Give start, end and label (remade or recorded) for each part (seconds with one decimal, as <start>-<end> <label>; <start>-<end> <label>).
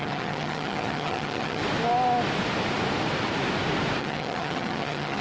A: 0.0-1.6 remade; 1.6-4.0 recorded; 4.0-5.2 remade